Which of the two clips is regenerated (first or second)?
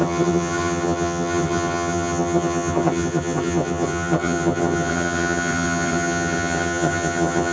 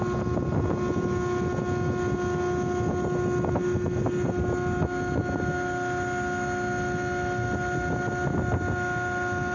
first